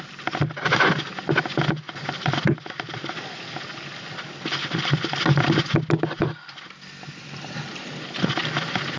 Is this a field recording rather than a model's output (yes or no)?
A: yes